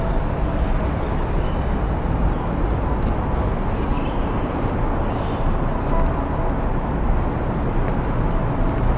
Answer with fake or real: real